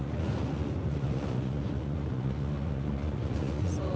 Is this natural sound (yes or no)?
no